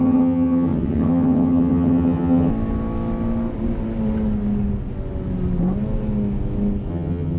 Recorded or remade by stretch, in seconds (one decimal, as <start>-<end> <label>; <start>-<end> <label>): 0.0-2.5 remade; 2.5-6.9 recorded; 6.9-7.4 remade

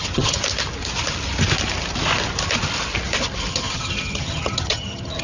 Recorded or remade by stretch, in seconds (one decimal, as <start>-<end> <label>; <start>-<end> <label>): 0.0-0.4 remade; 0.4-3.5 recorded; 3.5-5.2 remade

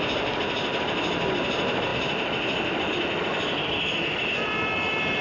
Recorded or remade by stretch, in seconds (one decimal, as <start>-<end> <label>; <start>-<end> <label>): 0.0-5.2 recorded

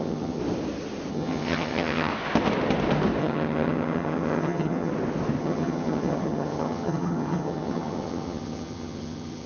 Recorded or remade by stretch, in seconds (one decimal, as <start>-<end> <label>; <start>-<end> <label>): 0.0-0.4 remade; 0.4-1.1 recorded; 1.1-2.1 remade; 2.1-3.2 recorded; 3.2-4.9 remade; 4.9-5.4 recorded; 5.4-9.5 remade

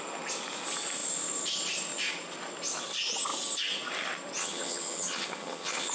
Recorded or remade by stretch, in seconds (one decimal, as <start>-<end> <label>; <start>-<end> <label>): 0.0-4.4 recorded; 4.4-5.9 remade